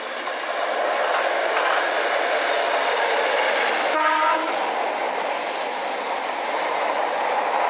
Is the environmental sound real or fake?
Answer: real